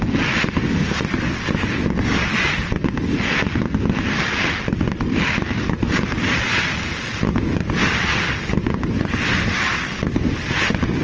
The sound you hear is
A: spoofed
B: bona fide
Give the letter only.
B